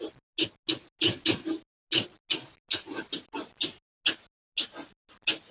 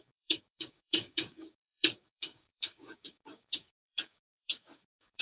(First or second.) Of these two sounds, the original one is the first